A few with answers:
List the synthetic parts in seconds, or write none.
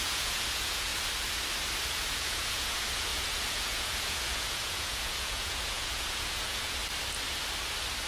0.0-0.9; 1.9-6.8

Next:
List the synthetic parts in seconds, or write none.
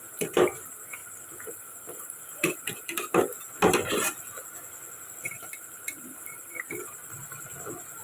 none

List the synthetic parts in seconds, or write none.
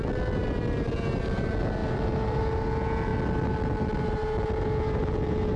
none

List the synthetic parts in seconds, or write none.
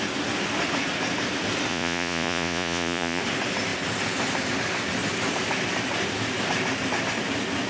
1.7-3.2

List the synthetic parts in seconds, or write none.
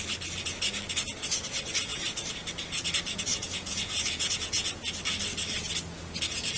1.9-2.5; 3.3-4.8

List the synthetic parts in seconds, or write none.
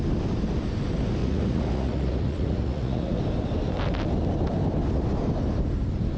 1.2-3.2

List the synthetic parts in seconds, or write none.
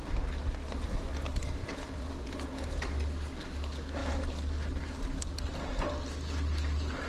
1.6-2.3